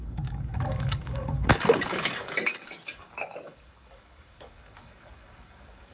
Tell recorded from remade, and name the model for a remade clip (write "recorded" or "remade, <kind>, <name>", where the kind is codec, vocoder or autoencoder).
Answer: remade, codec, DAC